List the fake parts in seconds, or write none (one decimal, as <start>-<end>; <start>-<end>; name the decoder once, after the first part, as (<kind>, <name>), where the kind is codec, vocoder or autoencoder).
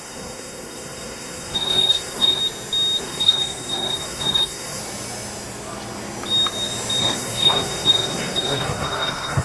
0.0-2.4 (codec, SNAC); 3.0-4.8; 7.0-9.4